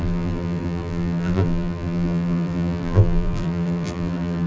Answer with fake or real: fake